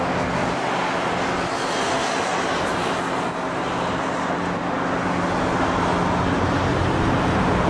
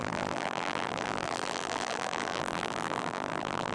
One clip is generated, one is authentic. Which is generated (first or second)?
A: second